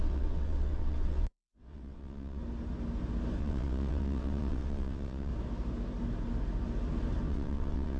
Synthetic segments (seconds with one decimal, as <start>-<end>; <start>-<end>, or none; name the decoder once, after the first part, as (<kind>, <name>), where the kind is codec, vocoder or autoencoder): 0.0-2.4 (vocoder, WaveNeXt); 3.4-5.3; 7.3-8.0